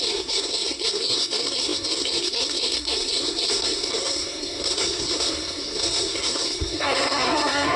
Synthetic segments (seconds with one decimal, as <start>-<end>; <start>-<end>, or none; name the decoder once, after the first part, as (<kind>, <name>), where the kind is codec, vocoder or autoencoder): 0.0-7.8 (codec, SNAC)